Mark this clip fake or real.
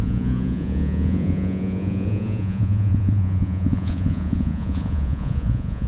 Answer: fake